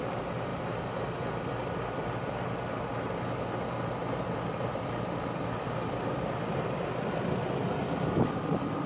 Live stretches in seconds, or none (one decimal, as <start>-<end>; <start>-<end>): 0.0-8.9